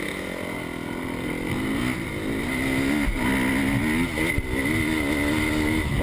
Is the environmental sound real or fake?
real